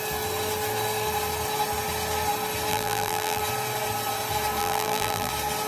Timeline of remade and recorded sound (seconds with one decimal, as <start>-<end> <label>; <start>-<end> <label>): 0.0-2.7 recorded; 2.7-3.4 remade; 3.4-4.6 recorded; 4.6-5.3 remade; 5.3-5.7 recorded